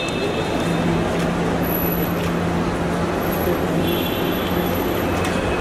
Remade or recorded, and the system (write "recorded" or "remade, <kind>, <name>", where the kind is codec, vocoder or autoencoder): recorded